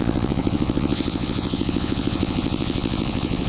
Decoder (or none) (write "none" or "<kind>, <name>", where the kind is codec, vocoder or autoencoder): vocoder, WaveNeXt